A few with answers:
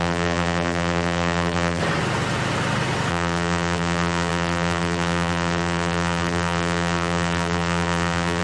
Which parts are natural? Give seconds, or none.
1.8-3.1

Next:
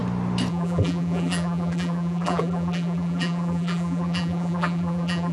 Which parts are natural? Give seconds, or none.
0.0-0.5

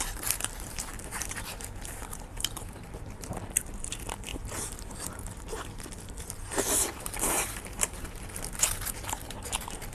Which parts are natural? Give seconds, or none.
none

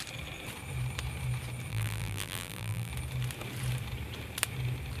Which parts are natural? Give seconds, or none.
0.0-1.7; 2.9-5.0

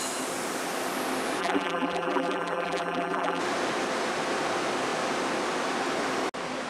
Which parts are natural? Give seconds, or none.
0.0-1.4; 3.4-6.7

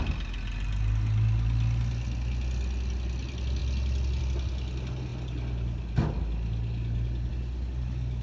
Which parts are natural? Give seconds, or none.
0.0-8.2

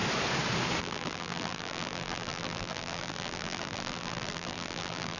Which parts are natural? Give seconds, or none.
0.0-0.8